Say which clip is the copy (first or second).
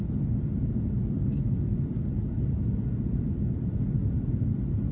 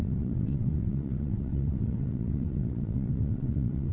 second